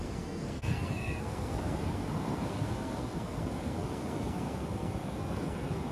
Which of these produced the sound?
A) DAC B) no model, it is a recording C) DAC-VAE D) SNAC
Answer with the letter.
D